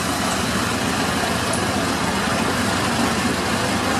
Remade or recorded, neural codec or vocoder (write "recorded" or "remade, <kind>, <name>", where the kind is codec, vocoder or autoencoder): recorded